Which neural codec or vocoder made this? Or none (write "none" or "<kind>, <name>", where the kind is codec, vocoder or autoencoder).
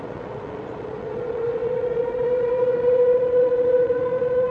vocoder, Vocos